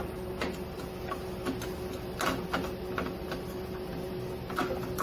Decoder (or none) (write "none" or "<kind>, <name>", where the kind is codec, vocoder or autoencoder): none